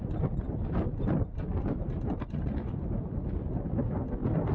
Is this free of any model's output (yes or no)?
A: yes